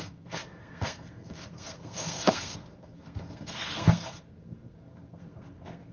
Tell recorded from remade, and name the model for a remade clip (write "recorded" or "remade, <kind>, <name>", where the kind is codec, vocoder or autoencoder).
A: remade, codec, SNAC